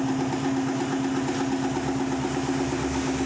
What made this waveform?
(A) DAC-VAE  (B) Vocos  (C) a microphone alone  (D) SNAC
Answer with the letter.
C